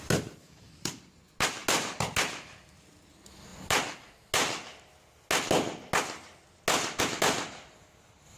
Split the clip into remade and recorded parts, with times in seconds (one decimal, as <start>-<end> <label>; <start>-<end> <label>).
0.0-0.4 recorded; 0.4-1.0 remade; 1.0-8.4 recorded